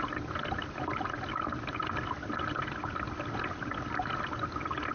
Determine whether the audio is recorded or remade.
recorded